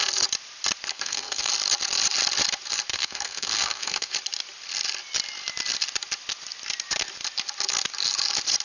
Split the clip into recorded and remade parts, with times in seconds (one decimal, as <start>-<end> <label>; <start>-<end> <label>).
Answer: 0.0-0.9 recorded; 0.9-1.5 remade; 1.5-2.9 recorded; 2.9-4.1 remade; 4.1-8.6 recorded